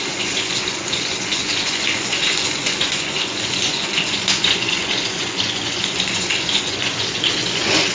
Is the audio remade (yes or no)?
yes